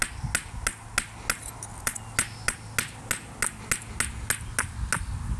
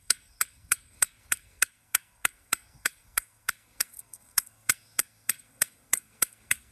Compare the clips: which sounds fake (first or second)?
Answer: second